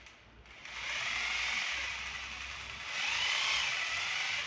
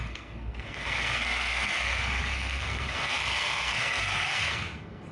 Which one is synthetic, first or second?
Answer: second